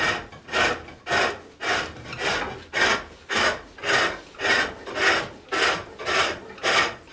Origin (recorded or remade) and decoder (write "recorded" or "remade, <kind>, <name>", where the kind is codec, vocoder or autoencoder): recorded